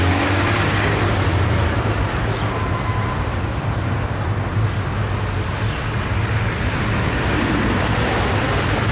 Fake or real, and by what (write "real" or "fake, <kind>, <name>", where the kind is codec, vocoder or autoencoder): real